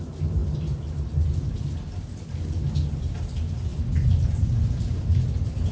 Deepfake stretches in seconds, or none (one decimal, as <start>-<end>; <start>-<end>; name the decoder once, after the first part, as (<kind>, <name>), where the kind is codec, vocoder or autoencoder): none